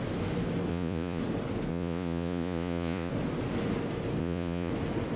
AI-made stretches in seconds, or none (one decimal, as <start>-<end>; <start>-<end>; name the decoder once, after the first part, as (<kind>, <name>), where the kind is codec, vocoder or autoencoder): 0.7-1.2 (vocoder, Vocos); 1.7-3.1; 4.2-4.7